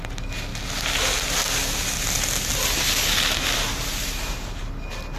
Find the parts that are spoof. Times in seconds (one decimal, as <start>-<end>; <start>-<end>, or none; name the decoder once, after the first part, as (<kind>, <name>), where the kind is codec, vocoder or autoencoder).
3.9-4.6 (vocoder, BigVGAN v2)